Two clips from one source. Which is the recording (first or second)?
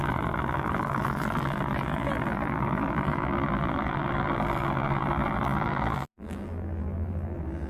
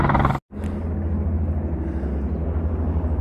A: second